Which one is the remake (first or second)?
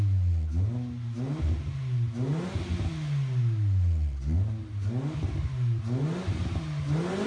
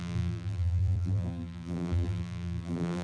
second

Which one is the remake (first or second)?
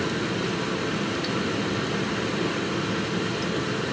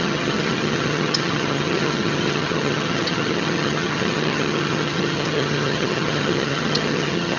second